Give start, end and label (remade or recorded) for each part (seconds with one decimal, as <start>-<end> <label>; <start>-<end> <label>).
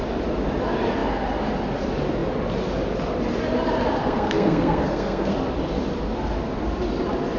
0.0-4.0 recorded; 4.0-5.3 remade; 5.3-7.4 recorded